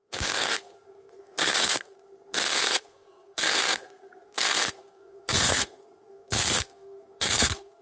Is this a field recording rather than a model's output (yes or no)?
no